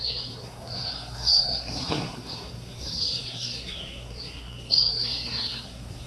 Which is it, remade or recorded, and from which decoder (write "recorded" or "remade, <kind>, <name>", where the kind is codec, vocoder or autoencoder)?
remade, codec, SNAC